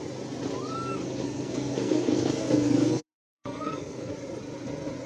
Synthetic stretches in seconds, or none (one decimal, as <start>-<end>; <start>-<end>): 1.0-4.1